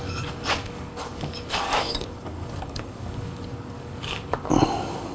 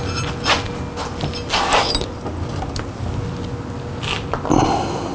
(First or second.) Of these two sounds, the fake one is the first